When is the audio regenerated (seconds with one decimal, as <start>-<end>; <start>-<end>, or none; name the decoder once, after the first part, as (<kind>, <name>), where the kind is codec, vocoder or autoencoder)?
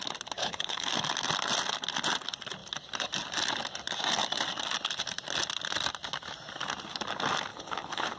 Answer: 0.4-0.9 (codec, HILCodec); 7.5-8.2